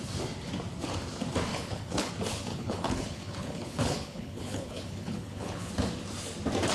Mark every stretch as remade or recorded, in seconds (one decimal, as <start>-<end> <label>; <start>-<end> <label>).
0.0-1.5 recorded; 1.5-2.1 remade; 2.1-2.5 recorded; 2.5-5.7 remade; 5.7-6.7 recorded